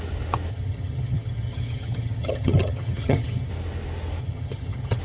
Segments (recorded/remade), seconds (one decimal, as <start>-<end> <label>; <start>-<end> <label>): 0.0-0.5 recorded; 0.5-3.5 remade; 3.5-4.2 recorded; 4.2-5.0 remade